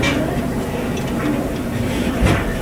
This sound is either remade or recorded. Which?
recorded